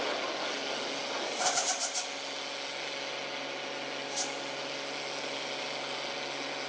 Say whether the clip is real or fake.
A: real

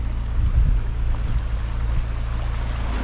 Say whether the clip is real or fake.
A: real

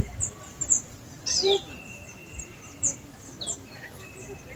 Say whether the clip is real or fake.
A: real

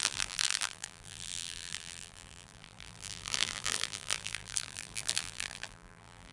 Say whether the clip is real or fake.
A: fake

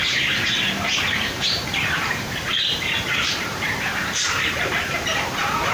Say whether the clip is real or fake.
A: fake